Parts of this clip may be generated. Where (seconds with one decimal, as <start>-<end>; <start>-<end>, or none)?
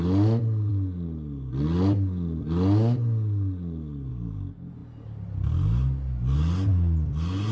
none